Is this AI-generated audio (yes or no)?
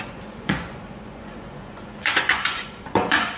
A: yes